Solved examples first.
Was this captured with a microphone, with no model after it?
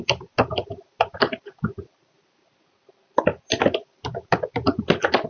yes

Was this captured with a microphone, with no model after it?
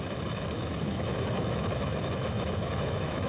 no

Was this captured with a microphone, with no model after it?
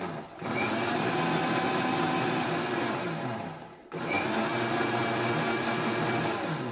yes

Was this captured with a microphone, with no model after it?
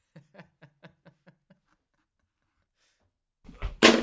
yes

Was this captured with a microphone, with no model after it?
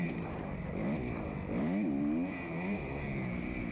yes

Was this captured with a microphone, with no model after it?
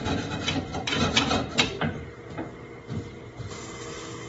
yes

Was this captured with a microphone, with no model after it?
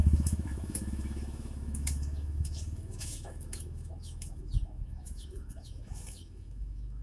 no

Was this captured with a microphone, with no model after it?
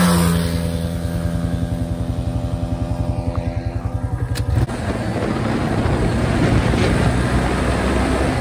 yes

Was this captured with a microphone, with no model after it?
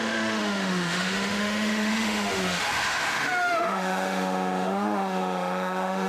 no